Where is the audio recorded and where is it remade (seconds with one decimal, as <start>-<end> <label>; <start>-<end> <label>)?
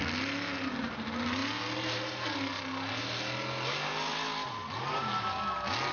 0.0-5.9 recorded